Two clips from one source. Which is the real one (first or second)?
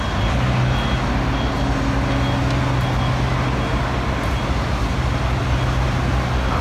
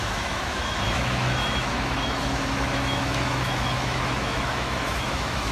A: first